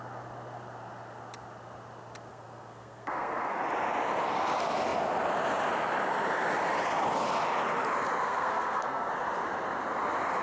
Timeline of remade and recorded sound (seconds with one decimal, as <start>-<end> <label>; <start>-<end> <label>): 0.0-2.3 recorded; 2.3-3.6 remade; 3.6-8.2 recorded; 8.2-9.1 remade; 9.1-10.4 recorded